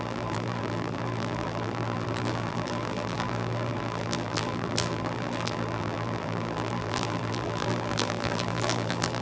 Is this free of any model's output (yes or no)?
no